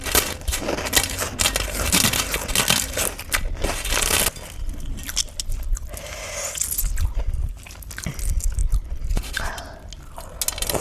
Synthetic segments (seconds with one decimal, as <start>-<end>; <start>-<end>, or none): none